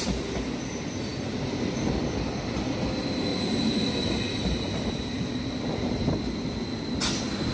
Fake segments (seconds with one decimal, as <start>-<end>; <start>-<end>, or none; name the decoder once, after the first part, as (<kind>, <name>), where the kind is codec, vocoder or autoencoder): 3.3-5.3 (vocoder, BigVGAN v2)